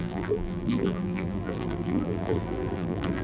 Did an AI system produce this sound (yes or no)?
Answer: yes